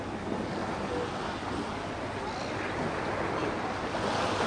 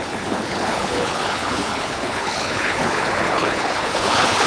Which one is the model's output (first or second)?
second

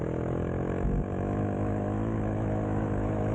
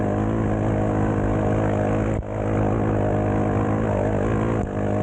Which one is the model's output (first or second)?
first